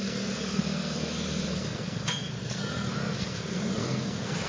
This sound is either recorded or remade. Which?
remade